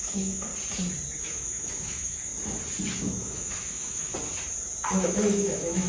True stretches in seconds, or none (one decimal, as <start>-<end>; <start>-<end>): 0.5-1.2; 2.3-3.0; 4.1-4.9